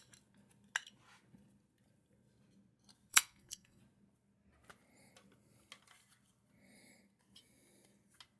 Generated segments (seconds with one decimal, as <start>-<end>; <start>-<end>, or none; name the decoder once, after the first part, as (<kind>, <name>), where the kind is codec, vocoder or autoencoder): 3.1-3.8 (codec, SNAC)